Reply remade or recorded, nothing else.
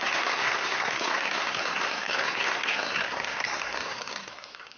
remade